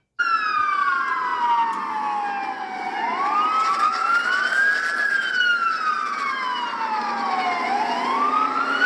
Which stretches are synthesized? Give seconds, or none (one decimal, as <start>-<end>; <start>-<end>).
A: none